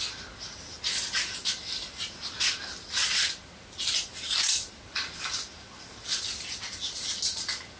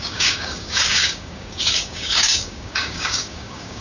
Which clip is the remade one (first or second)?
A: second